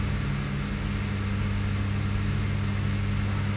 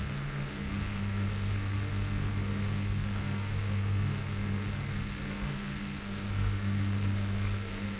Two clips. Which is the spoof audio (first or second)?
second